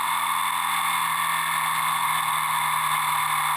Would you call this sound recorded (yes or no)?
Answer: yes